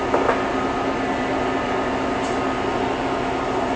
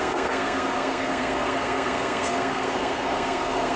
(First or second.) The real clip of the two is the first